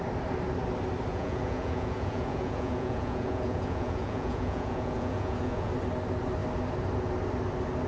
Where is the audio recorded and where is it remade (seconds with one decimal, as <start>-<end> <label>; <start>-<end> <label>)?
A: 0.0-1.1 recorded; 1.1-5.7 remade; 5.7-7.9 recorded